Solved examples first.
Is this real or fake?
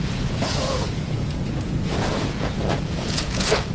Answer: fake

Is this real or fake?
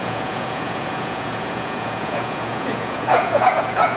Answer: fake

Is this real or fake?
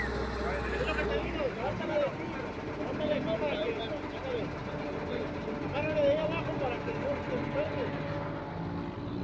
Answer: real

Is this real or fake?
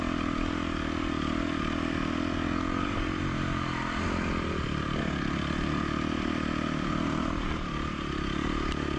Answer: real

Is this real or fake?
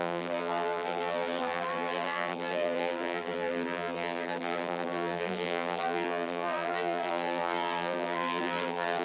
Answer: fake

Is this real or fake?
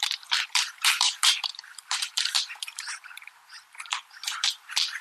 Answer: fake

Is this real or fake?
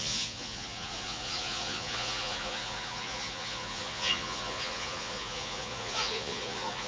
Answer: fake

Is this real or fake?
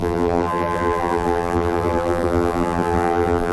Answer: fake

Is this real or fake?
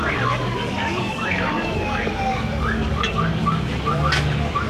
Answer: fake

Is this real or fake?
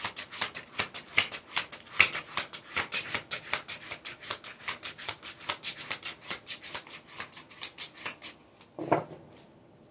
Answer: real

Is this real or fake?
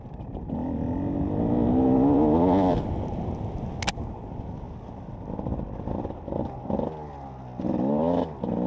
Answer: real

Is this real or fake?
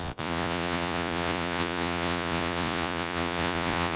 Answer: fake